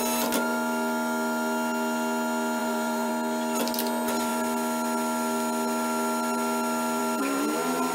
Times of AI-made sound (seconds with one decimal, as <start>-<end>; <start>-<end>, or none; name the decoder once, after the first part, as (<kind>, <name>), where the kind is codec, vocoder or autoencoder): 2.6-3.1 (vocoder, BigVGAN v2)

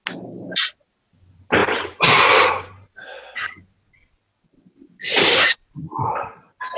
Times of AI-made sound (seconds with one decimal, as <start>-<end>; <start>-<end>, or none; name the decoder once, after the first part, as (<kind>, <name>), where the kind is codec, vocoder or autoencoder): 1.6-3.5 (vocoder, BigVGAN v2); 5.1-6.2

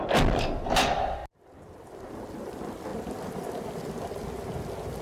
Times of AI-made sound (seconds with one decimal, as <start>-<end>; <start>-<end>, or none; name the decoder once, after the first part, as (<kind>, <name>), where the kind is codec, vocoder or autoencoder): none

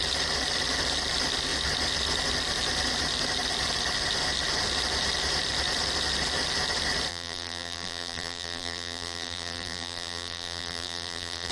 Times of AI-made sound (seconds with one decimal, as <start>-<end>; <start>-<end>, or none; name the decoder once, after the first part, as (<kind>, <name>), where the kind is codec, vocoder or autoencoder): 7.1-11.5 (vocoder, BigVGAN v2)

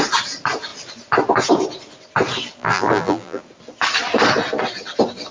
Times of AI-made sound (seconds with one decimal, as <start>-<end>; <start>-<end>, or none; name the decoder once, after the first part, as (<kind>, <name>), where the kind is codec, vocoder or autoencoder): 2.6-3.4 (vocoder, BigVGAN v2)